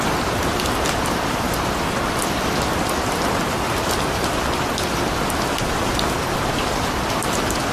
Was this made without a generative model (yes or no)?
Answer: yes